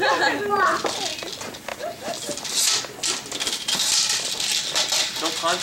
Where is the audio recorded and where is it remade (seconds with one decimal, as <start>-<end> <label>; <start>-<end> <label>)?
0.0-5.6 recorded